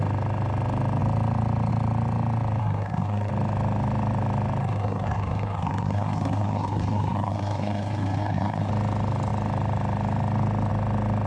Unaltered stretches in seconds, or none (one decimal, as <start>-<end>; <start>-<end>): 0.0-2.6; 3.3-4.6; 8.7-11.3